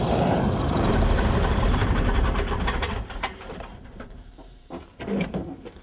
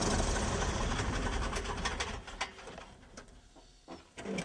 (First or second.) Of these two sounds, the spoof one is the first